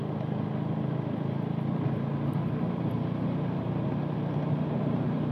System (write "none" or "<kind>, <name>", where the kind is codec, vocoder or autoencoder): none